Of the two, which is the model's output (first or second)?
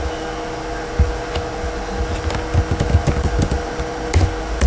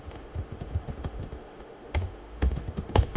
second